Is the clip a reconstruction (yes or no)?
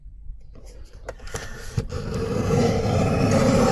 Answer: yes